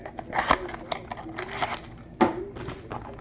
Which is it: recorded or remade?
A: recorded